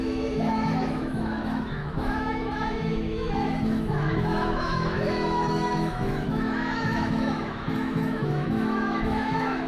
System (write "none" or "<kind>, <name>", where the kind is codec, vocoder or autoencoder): autoencoder, DAC-VAE